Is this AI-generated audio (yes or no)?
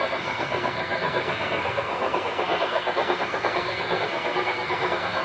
yes